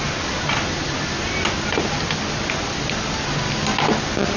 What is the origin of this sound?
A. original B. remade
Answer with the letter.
A